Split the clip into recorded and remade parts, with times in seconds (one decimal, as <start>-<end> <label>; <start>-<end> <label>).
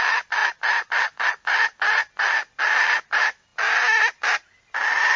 0.0-5.2 recorded